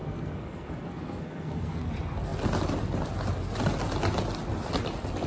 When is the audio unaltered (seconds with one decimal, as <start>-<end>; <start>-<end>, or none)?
1.9-5.3